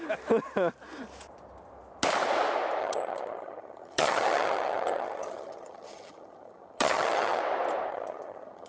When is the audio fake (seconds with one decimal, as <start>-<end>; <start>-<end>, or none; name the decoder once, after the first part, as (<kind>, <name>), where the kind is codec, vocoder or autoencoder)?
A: 2.8-7.4 (vocoder, HiFi-GAN); 7.9-8.7